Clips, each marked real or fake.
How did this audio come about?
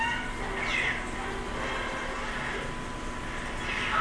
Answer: real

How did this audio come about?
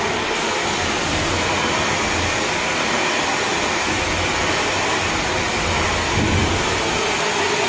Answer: real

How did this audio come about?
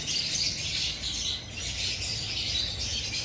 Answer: real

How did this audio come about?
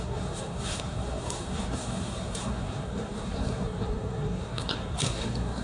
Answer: fake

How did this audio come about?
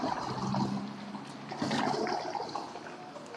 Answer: real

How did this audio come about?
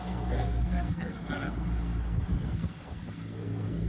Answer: fake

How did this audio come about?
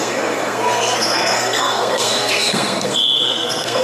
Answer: fake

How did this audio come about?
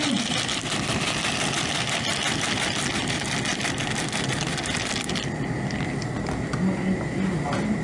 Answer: real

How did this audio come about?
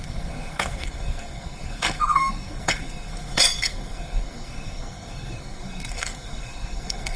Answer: fake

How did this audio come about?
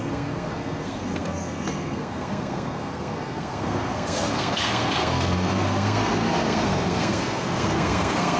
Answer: fake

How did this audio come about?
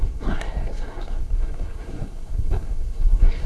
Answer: fake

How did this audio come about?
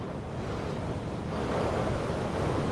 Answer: real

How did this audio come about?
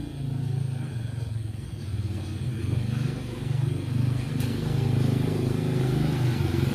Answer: fake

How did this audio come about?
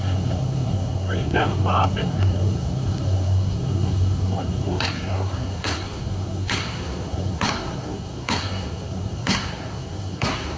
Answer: fake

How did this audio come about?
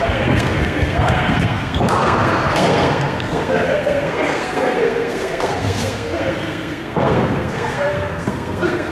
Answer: fake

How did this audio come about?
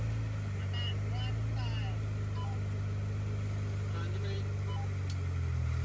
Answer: real